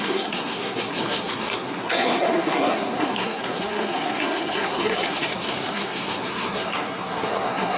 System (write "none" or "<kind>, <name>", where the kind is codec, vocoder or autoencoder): codec, SNAC